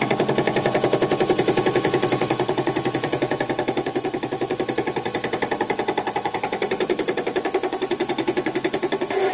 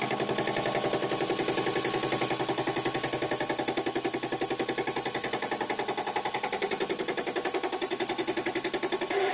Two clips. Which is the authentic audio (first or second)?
second